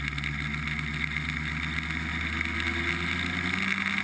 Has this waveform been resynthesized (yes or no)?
no